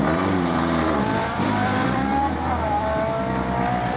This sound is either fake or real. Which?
fake